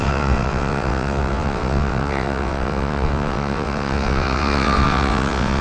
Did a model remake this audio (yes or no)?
yes